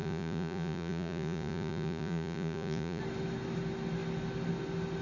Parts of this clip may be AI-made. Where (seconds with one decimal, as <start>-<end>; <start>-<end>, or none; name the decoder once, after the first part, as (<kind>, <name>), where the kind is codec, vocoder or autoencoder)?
0.0-3.0 (vocoder, Vocos)